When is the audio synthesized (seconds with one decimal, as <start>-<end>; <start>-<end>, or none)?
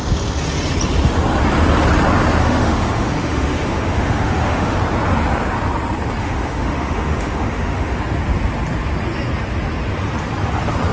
2.4-4.8; 6.2-8.0